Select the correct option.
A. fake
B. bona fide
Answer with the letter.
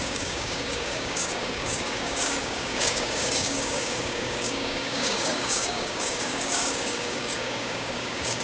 A